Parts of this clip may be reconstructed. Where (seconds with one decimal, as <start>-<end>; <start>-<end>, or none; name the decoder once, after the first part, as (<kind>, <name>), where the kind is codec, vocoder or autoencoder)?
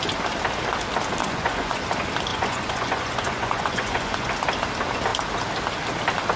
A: 1.2-1.8 (vocoder, Vocos); 2.3-4.3